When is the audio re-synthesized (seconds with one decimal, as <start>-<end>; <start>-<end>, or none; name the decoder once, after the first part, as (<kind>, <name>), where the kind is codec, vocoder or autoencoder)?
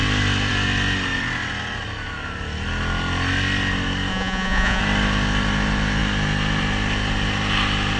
4.1-4.8 (vocoder, Vocos)